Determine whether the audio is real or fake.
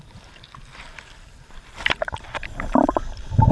fake